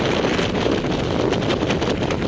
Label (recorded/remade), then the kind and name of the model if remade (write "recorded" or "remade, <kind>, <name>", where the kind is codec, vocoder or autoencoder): recorded